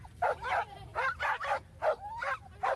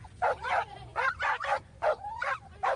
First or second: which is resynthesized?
second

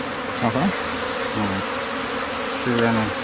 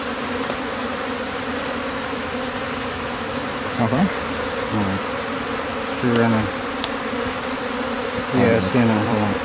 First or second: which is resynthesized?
second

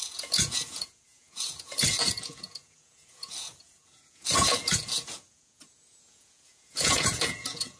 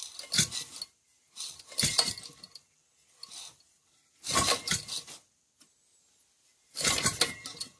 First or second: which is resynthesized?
first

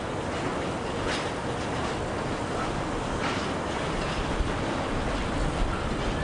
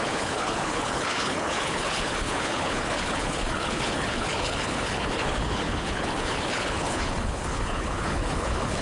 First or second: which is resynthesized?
second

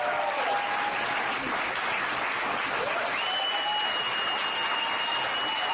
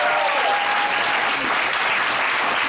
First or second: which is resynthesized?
second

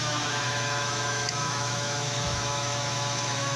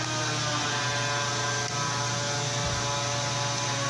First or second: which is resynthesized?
first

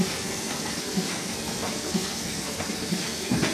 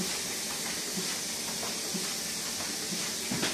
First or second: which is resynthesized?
first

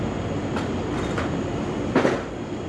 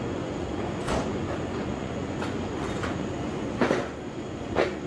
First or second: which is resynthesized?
second